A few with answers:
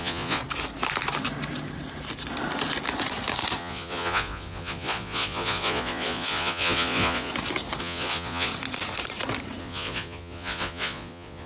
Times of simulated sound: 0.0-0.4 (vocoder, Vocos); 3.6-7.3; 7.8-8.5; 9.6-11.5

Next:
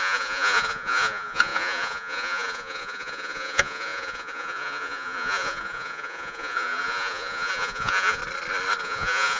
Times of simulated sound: 0.0-8.2 (vocoder, Vocos); 8.8-9.4

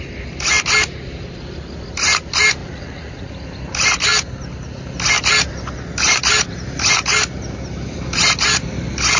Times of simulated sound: 2.6-3.3 (vocoder, Vocos)

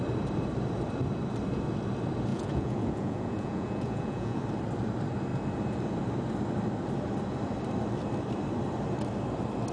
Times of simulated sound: 2.3-4.4 (vocoder, Vocos)